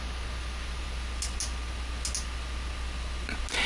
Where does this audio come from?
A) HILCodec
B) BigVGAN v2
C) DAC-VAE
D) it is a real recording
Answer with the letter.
D